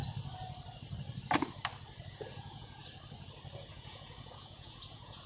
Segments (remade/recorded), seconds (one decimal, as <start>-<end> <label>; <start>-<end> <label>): 0.0-2.1 recorded; 2.1-2.8 remade; 2.8-3.7 recorded; 3.7-5.3 remade